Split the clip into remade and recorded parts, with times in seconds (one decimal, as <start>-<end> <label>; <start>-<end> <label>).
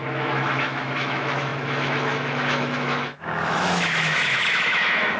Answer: 0.0-5.2 remade